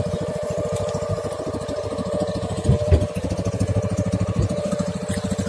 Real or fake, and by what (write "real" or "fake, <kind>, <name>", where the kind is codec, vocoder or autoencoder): real